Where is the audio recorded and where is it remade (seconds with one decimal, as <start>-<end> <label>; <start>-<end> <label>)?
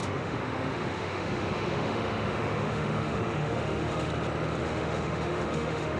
0.0-4.1 remade; 4.1-4.6 recorded; 4.6-6.0 remade